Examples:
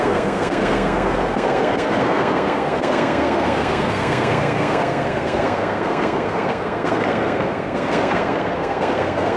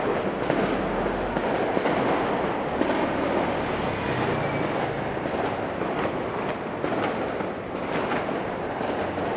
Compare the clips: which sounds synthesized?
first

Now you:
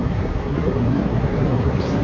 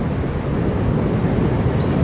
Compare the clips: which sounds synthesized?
first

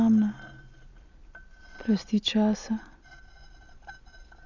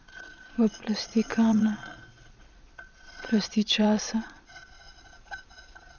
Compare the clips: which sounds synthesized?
second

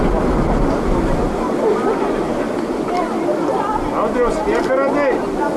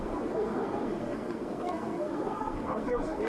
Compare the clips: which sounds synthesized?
second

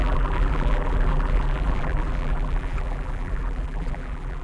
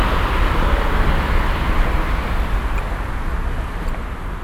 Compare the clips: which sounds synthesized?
first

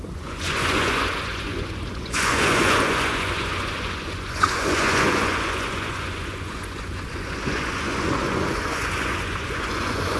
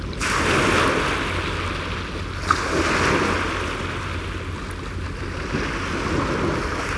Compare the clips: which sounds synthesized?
first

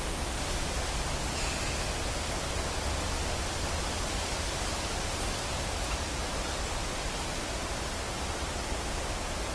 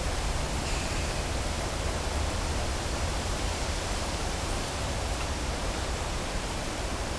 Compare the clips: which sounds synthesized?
second